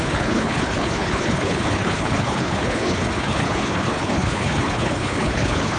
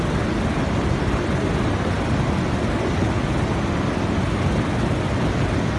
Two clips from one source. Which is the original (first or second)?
second